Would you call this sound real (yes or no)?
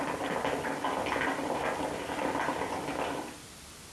yes